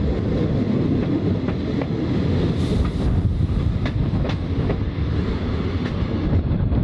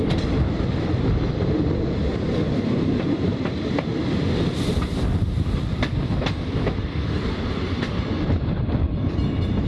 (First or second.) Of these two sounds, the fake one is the second